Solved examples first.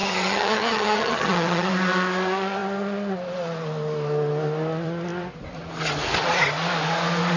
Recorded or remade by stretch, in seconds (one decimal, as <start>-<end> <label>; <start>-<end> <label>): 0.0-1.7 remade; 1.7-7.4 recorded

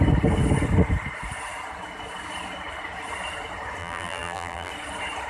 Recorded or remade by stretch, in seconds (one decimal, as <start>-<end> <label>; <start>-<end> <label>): 0.0-3.8 recorded; 3.8-4.7 remade; 4.7-5.3 recorded

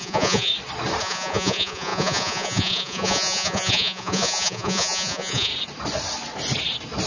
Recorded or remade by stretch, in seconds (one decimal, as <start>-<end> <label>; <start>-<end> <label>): 0.0-0.5 remade; 0.5-1.0 recorded; 1.0-5.5 remade; 5.5-7.1 recorded

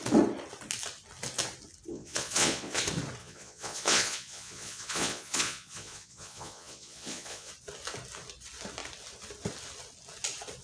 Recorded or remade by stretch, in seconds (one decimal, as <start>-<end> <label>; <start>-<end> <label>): 0.0-1.9 recorded; 1.9-2.8 remade; 2.8-3.2 recorded; 3.2-7.5 remade; 7.5-10.6 recorded

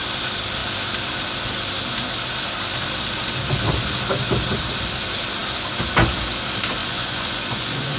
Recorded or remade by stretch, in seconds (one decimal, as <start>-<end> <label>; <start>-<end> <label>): 0.0-6.8 recorded; 6.8-8.0 remade